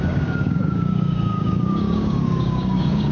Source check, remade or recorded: remade